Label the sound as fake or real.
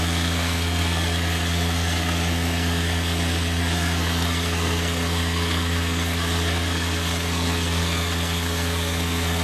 fake